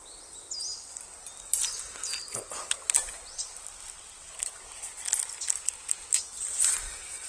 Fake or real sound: real